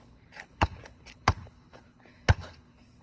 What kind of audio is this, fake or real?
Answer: fake